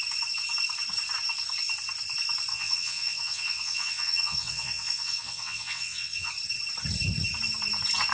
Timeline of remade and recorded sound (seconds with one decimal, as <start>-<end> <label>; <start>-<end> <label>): 0.0-2.5 recorded; 2.5-6.3 remade; 6.3-8.1 recorded